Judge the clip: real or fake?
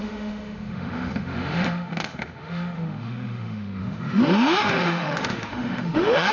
fake